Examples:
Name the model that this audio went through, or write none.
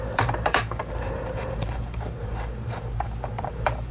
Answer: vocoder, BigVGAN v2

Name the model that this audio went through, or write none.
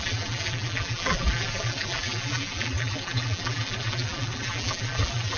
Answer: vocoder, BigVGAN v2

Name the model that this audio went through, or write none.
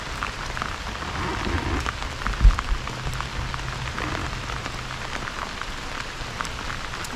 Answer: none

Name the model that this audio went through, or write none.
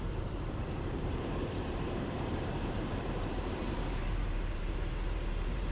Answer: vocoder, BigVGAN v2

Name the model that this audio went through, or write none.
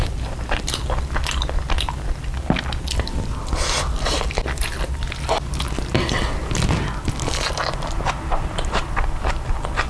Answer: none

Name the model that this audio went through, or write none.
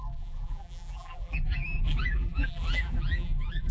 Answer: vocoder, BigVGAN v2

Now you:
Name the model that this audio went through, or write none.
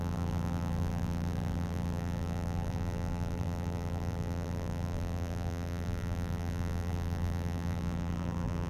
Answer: vocoder, BigVGAN v2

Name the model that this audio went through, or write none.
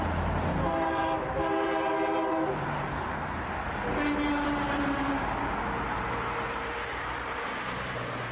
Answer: vocoder, BigVGAN v2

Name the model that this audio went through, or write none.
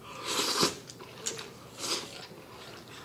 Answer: none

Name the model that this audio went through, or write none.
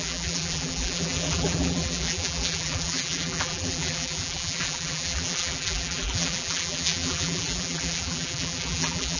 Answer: vocoder, BigVGAN v2